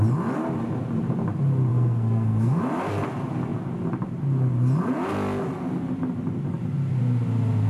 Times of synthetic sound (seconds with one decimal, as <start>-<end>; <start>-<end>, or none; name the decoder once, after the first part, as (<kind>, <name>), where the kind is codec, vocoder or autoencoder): 1.7-2.6 (codec, SNAC)